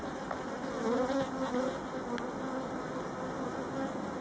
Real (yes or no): yes